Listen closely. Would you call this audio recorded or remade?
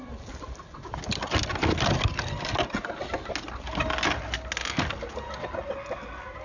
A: recorded